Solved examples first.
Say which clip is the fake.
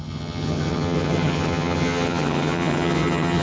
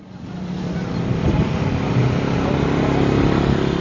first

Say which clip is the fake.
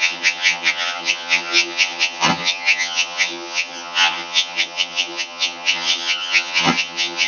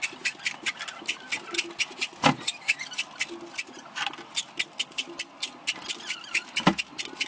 first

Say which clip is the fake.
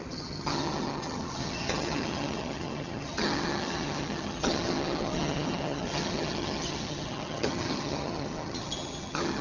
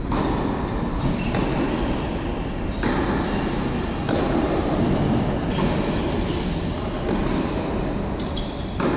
first